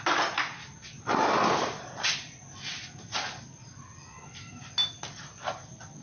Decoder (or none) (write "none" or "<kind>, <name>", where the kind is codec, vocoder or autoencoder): none